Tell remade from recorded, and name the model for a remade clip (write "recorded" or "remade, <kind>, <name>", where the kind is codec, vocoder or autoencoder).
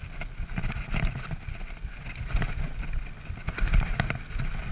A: recorded